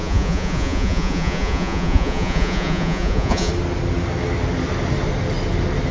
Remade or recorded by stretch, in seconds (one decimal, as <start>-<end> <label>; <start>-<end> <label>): 0.0-3.5 remade; 3.5-5.9 recorded